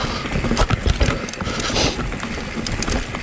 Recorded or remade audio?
recorded